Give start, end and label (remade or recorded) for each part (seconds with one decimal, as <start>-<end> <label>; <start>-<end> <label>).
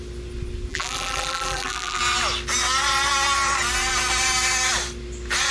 0.0-0.7 recorded; 0.7-2.0 remade; 2.0-5.5 recorded